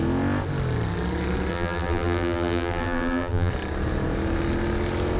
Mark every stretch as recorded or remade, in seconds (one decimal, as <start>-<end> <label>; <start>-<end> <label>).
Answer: 0.0-1.5 recorded; 1.5-3.5 remade; 3.5-5.2 recorded